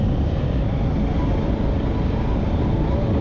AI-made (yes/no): no